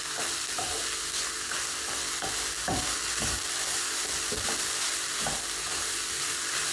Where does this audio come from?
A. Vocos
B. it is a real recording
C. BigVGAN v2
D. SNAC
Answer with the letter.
B